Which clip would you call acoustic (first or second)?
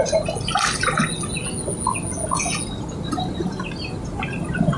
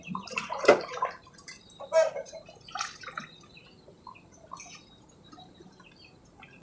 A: first